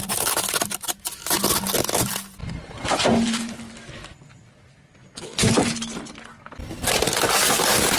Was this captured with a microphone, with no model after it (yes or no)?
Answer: yes